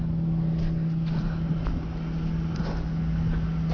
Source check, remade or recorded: recorded